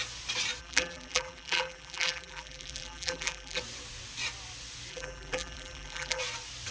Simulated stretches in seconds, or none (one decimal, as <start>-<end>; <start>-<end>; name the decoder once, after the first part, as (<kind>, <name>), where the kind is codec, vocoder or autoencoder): 0.6-3.6 (vocoder, BigVGAN v2); 4.9-6.2